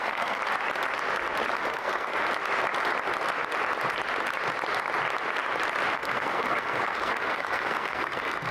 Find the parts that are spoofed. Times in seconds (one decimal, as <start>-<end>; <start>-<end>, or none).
0.0-0.4; 1.7-2.1; 5.9-8.5